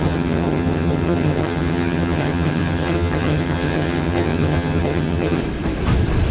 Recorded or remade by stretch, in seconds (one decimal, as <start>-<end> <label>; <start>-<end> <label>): 0.0-5.4 remade; 5.4-6.3 recorded

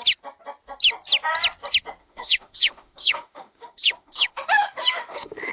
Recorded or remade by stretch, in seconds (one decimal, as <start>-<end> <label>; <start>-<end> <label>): 0.0-2.0 recorded; 2.0-5.5 remade

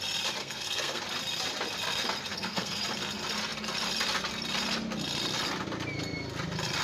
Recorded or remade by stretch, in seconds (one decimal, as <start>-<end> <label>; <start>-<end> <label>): 0.0-0.4 recorded; 0.4-1.0 remade; 1.0-2.3 recorded; 2.3-2.8 remade; 2.8-6.8 recorded

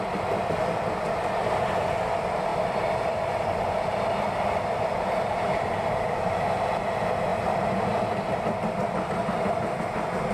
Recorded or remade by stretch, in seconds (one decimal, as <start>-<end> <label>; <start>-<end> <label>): 0.0-10.3 recorded

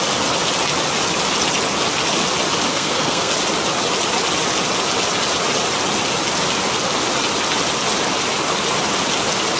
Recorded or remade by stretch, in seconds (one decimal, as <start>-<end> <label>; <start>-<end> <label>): 0.0-2.7 recorded; 2.7-3.3 remade; 3.3-9.6 recorded

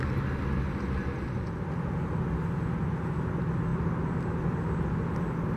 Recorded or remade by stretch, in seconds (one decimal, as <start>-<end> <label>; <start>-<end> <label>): 0.0-5.6 recorded